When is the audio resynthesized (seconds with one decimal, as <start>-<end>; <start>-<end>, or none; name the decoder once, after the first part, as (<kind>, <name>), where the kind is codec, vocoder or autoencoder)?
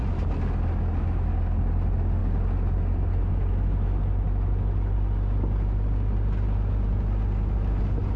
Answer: none